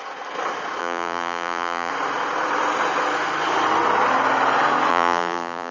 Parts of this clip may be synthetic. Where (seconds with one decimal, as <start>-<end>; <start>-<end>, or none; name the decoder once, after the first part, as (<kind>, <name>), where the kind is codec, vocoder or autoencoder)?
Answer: 0.8-1.9 (vocoder, BigVGAN v2); 4.9-5.7